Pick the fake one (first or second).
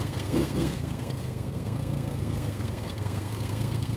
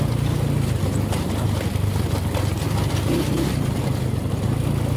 first